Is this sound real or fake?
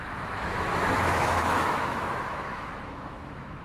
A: fake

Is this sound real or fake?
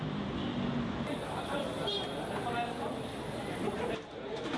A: real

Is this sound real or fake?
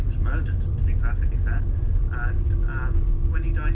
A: real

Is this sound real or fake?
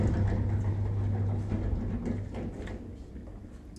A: real